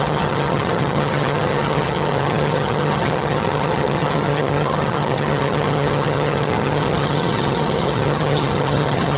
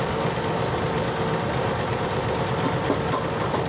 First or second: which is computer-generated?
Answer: first